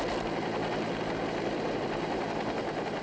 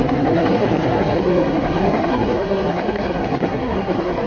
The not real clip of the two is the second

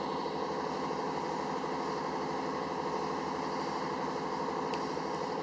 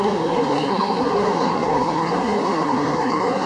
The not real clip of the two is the second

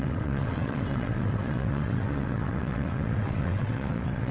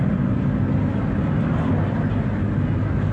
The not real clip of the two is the first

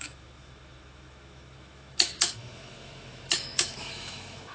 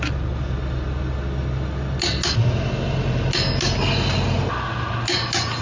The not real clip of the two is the first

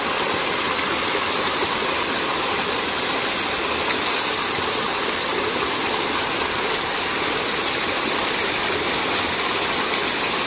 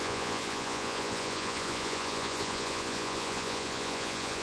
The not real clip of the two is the second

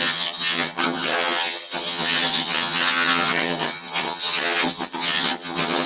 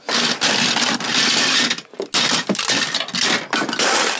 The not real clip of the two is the first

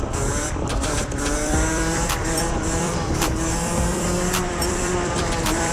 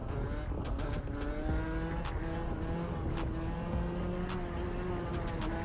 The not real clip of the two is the first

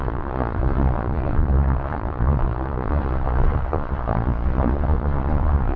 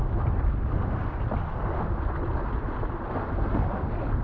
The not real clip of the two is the first